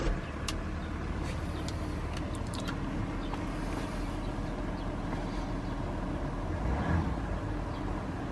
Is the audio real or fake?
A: real